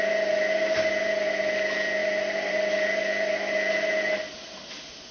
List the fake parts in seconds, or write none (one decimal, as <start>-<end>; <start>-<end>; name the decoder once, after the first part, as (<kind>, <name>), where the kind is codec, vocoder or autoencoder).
none